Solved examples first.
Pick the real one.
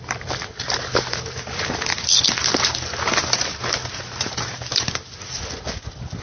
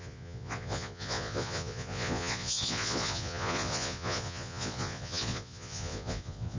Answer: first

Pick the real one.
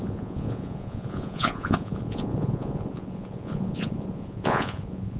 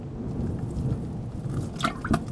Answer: second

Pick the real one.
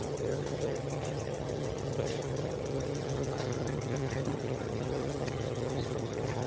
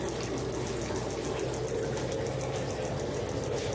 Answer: second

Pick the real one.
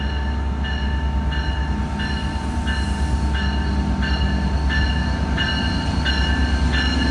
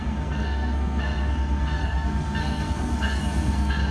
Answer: first